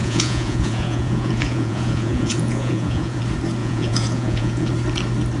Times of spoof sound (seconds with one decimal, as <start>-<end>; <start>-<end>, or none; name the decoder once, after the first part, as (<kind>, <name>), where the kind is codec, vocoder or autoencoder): 0.0-3.2 (vocoder, Vocos); 3.6-4.7